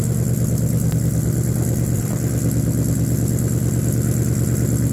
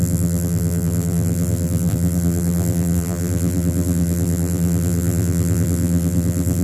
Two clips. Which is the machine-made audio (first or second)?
second